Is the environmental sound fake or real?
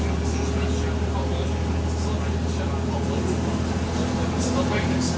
real